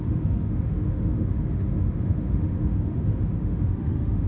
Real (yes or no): no